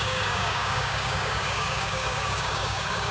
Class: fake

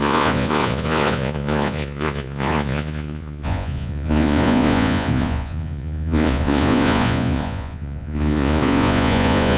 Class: fake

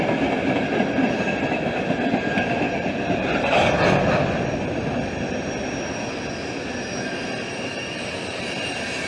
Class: real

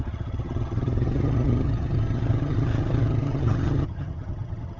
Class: fake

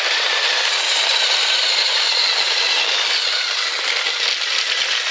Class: real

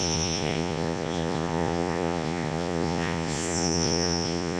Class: fake